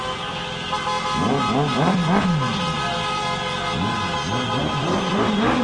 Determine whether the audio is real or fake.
real